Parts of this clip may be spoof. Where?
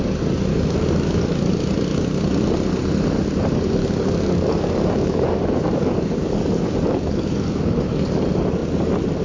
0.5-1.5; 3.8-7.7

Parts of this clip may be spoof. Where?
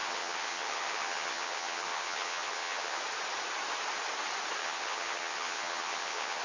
0.0-3.0; 4.6-6.4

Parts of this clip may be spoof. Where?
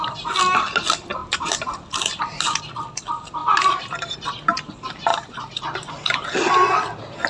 1.2-2.2; 3.4-4.3; 5.1-5.9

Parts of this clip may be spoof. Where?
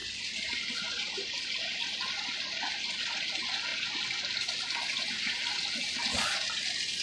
1.1-3.7; 5.2-7.0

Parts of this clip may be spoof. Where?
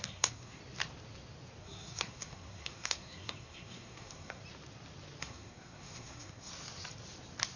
0.0-0.6; 1.6-4.4; 5.2-6.5